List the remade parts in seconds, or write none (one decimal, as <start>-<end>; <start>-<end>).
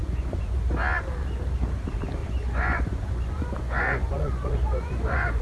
0.0-0.7; 2.2-5.4